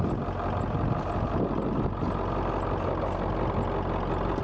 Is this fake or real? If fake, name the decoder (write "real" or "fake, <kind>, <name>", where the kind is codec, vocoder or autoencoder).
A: real